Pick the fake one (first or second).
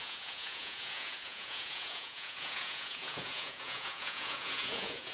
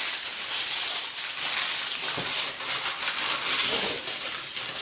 first